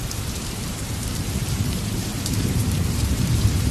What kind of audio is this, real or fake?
fake